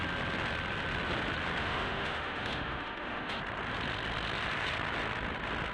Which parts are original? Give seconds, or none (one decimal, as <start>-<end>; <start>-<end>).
0.0-1.6; 3.4-5.7